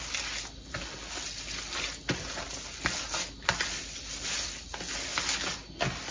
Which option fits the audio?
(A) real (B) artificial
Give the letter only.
A